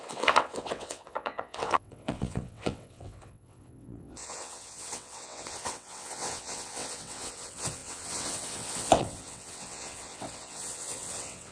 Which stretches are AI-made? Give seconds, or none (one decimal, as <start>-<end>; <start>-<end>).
0.0-11.5